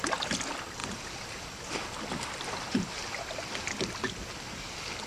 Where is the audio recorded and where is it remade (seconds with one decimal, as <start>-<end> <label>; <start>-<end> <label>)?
0.0-0.8 recorded; 0.8-2.9 remade; 2.9-5.1 recorded